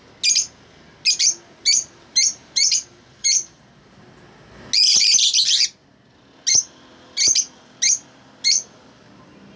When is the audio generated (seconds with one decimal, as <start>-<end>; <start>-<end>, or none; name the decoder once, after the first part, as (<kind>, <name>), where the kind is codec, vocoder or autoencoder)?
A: 1.8-4.0 (vocoder, BigVGAN v2)